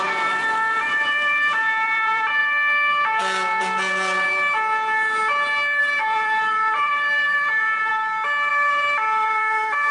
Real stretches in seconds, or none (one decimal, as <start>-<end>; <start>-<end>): 2.4-5.8; 7.9-8.5